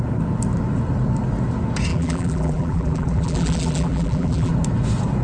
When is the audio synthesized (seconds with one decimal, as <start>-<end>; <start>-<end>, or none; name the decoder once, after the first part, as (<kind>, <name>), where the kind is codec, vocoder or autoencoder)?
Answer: 1.9-4.5 (vocoder, BigVGAN v2)